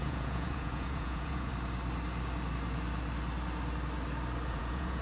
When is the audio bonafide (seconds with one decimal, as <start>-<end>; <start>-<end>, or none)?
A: 1.5-4.5